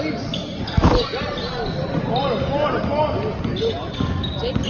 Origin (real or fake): real